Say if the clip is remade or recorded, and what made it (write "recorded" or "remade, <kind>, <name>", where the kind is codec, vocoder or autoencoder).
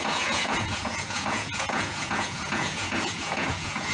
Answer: remade, vocoder, Vocos